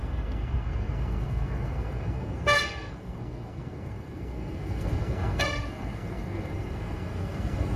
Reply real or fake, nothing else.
fake